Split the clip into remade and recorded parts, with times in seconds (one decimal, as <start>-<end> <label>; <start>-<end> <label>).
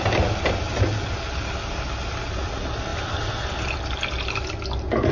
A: 0.0-5.1 recorded